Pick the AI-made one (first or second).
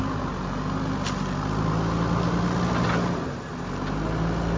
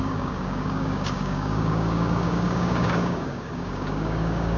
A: second